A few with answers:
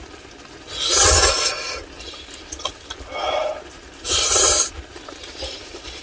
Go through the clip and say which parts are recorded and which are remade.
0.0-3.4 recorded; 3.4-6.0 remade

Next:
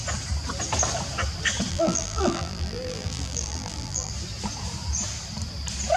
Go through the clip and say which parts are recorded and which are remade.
0.0-1.7 recorded; 1.7-4.1 remade; 4.1-6.0 recorded

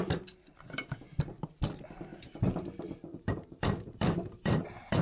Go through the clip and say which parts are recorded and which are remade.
0.0-2.1 recorded; 2.1-5.0 remade

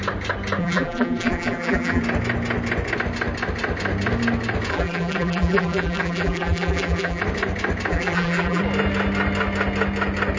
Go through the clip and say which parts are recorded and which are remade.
0.0-0.6 recorded; 0.6-2.0 remade; 2.0-4.7 recorded; 4.7-7.2 remade; 7.2-7.9 recorded; 7.9-8.6 remade; 8.6-10.4 recorded

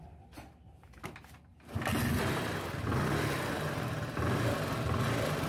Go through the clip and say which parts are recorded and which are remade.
0.0-1.5 recorded; 1.5-2.4 remade; 2.4-5.5 recorded

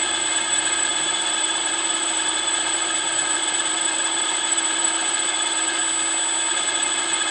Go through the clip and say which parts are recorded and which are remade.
0.0-5.8 remade; 5.8-6.5 recorded; 6.5-7.3 remade

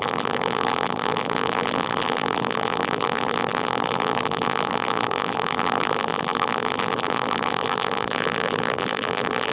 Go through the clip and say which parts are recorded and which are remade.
0.0-9.5 remade